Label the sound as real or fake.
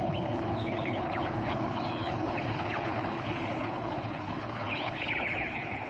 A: fake